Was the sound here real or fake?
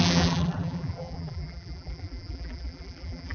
fake